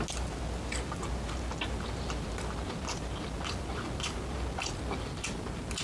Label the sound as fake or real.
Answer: real